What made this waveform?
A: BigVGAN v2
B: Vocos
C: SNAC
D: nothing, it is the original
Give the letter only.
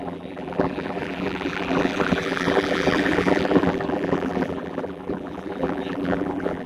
A